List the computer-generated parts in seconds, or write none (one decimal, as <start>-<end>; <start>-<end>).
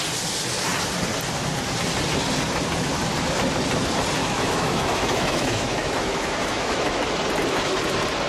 4.2-7.0